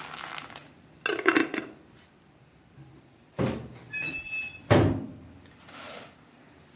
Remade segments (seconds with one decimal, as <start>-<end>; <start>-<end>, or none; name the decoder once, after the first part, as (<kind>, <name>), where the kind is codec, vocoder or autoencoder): none